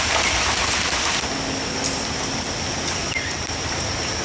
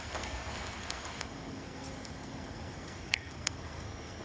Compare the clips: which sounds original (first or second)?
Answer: first